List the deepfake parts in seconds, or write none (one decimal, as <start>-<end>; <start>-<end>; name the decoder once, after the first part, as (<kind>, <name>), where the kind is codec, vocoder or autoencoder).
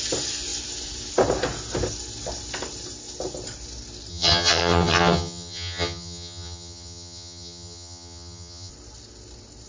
4.1-8.7 (vocoder, HiFi-GAN)